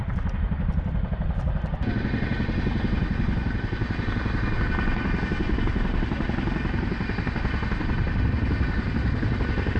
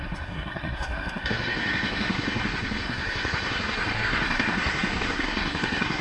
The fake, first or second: second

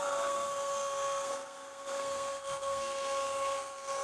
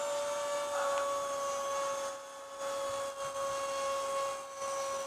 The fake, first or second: first